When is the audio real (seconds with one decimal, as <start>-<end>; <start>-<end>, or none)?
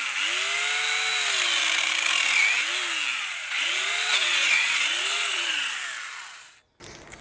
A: 0.0-3.1; 5.7-7.2